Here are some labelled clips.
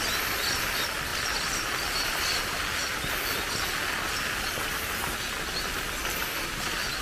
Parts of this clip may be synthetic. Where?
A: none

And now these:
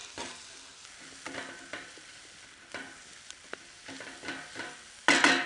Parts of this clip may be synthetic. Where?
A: none

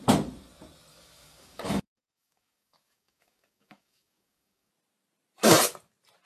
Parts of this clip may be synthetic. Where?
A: 0.9-4.7 (codec, DAC)

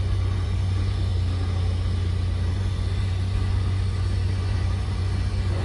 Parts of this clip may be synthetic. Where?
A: 0.0-1.1 (vocoder, Vocos); 2.5-5.6

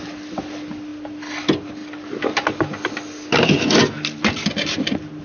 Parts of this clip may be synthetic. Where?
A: 0.0-1.8 (vocoder, BigVGAN v2)